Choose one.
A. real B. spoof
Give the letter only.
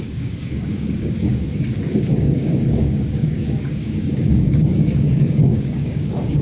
B